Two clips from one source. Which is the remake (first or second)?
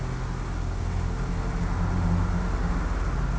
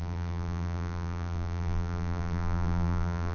second